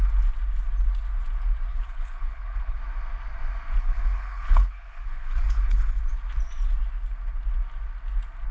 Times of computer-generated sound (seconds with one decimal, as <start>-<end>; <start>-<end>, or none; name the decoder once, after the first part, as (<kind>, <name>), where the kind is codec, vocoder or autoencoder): 1.7-2.8 (codec, HILCodec); 3.7-6.0